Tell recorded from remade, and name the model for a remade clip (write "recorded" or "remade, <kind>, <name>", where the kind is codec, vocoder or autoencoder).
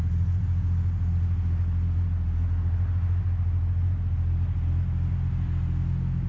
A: recorded